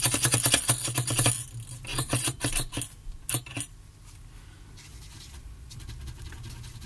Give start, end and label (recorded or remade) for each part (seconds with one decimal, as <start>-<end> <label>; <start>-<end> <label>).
0.0-1.9 recorded; 1.9-2.4 remade; 2.4-4.9 recorded; 4.9-5.8 remade; 5.8-6.9 recorded